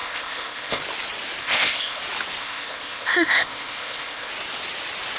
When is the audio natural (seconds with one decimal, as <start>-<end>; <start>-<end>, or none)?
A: 0.8-1.4; 2.0-2.4; 4.3-5.2